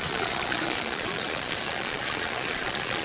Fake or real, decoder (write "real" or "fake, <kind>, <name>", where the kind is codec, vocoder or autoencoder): fake, vocoder, Vocos